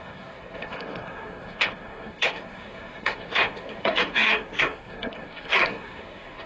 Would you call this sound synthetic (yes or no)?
yes